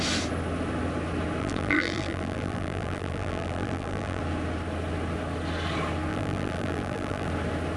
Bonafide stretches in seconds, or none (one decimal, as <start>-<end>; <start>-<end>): 0.0-1.4; 4.2-6.1; 7.3-7.8